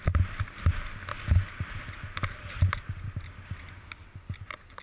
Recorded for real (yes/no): yes